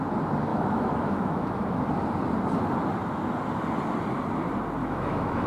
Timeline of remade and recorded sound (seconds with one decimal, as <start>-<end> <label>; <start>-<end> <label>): 0.0-0.5 recorded; 0.5-1.8 remade; 1.8-4.8 recorded; 4.8-5.5 remade